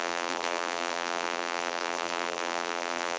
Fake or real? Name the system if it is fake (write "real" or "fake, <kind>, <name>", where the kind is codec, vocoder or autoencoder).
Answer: fake, vocoder, BigVGAN v2